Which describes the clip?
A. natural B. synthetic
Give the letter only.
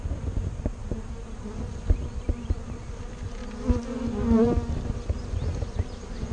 A